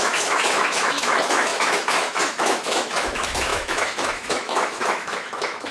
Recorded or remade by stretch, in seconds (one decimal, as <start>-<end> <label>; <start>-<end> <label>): 0.0-5.7 remade

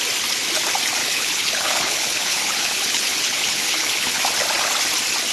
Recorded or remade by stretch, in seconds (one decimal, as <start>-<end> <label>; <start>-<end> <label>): 0.0-1.0 recorded; 1.0-4.2 remade; 4.2-5.3 recorded

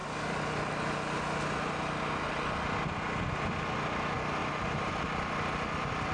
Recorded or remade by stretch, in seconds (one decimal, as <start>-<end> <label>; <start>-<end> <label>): 0.0-4.4 recorded; 4.4-4.9 remade; 4.9-6.1 recorded

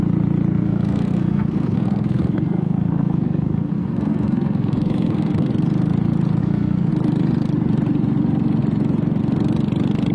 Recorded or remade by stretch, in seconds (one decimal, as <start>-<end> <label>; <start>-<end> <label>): 0.0-0.5 recorded; 0.5-5.5 remade; 5.5-6.4 recorded; 6.4-6.9 remade; 6.9-10.1 recorded

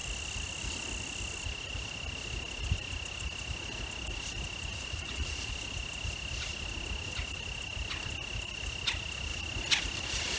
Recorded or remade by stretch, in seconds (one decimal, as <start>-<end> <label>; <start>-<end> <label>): 0.0-4.7 recorded; 4.7-5.5 remade; 5.5-10.4 recorded

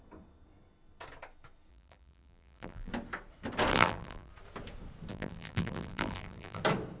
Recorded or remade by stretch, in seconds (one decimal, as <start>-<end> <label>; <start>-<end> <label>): 0.0-1.7 recorded; 1.7-2.9 remade; 2.9-3.7 recorded; 3.7-4.3 remade; 4.3-5.1 recorded; 5.1-6.6 remade; 6.6-7.0 recorded

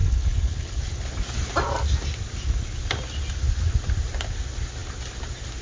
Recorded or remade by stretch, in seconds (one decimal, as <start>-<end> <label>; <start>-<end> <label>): 0.0-0.8 remade; 0.8-5.6 recorded